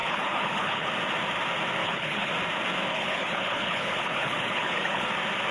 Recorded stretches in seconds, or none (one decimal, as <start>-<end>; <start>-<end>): 0.9-1.8; 2.3-2.9; 5.1-5.5